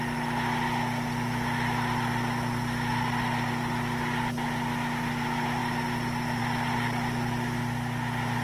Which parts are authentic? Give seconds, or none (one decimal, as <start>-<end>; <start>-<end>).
0.0-8.4